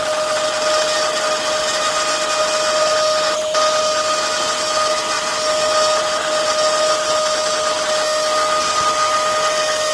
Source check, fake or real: real